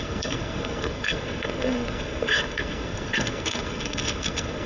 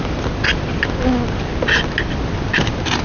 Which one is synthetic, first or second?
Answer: first